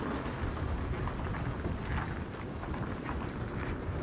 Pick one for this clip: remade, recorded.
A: recorded